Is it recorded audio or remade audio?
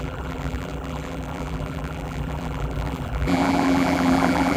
remade